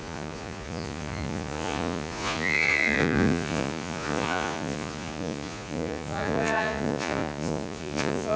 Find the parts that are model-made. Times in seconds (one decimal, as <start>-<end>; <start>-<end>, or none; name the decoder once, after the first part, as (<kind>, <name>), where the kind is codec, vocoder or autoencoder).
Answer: 0.0-8.4 (vocoder, Vocos)